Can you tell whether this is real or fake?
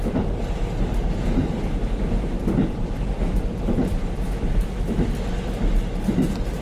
real